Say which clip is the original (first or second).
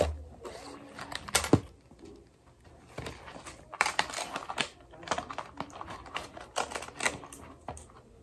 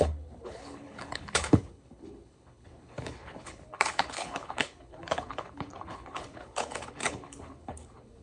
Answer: first